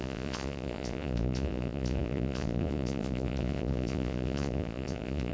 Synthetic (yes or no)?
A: yes